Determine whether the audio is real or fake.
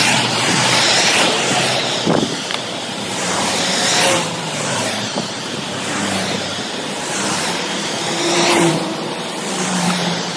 fake